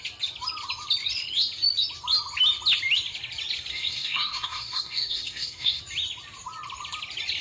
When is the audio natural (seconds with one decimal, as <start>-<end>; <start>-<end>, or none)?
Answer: 0.0-3.7; 5.8-7.4